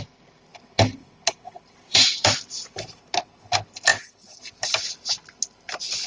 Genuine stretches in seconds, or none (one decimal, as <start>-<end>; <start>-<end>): 0.0-1.9; 2.7-6.1